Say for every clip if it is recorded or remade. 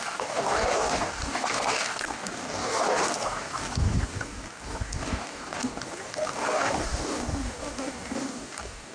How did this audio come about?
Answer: remade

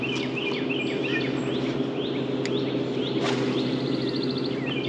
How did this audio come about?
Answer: recorded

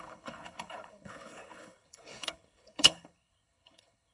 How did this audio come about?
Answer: remade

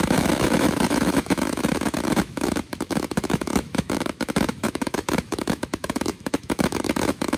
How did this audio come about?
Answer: remade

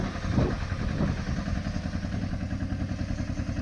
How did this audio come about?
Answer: recorded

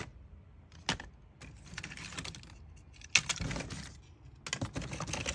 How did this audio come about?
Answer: recorded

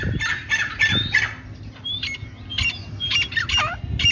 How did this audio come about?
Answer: recorded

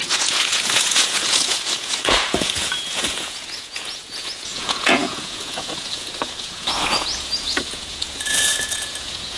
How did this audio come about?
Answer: remade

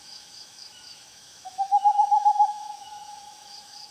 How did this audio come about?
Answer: remade